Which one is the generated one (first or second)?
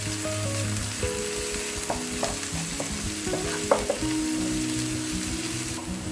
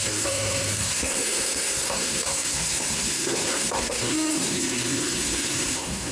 second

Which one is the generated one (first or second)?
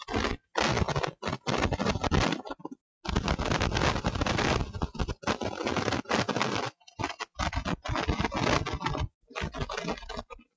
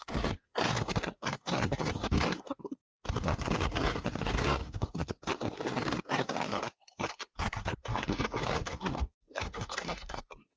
second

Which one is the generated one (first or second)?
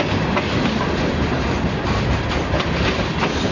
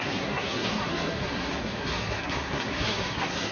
second